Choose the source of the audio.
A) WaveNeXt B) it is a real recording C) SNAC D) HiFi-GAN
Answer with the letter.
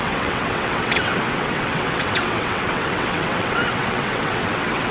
A